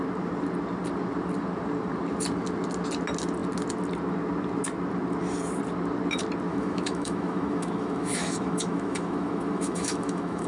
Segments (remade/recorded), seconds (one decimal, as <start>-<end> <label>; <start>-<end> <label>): 0.0-6.5 recorded; 6.5-10.5 remade